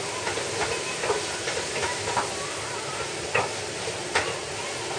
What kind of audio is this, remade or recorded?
recorded